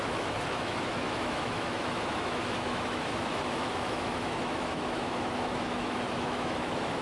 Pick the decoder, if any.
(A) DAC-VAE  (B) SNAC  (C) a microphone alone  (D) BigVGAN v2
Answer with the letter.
A